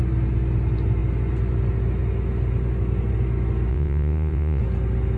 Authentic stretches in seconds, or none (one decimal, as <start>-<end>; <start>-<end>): 0.0-3.7; 4.6-5.2